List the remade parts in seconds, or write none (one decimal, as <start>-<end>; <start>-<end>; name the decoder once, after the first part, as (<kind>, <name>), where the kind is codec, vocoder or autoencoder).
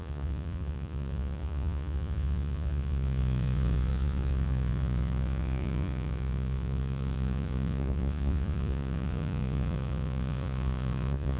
0.0-11.4 (vocoder, Vocos)